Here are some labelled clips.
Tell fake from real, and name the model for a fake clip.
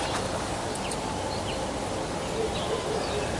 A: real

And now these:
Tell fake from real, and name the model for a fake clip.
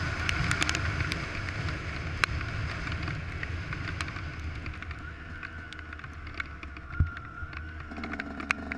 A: real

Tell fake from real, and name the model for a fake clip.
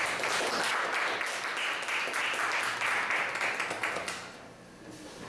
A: real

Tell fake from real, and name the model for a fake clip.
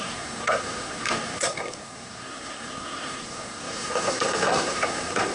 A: fake, codec, SNAC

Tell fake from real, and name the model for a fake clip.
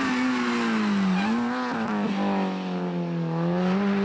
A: real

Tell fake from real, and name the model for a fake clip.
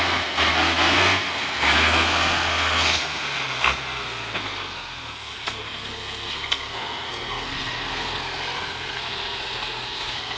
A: fake, codec, SNAC